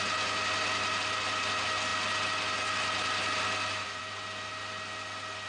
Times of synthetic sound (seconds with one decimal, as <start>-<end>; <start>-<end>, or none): none

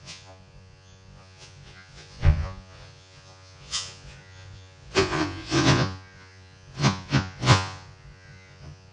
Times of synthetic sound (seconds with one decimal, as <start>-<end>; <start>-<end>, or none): 0.0-8.9